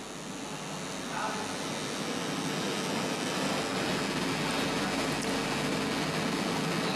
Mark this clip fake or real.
real